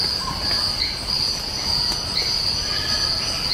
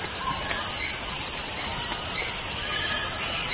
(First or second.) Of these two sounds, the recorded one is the first